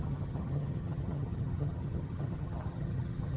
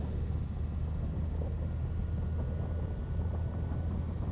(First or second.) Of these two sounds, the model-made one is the first